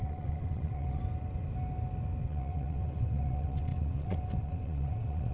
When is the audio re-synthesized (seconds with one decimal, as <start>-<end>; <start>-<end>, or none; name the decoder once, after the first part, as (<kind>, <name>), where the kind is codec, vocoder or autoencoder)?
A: 0.0-1.0 (vocoder, WaveNeXt); 2.2-5.3